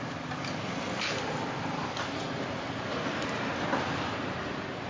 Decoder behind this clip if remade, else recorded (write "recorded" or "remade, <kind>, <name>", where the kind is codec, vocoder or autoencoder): recorded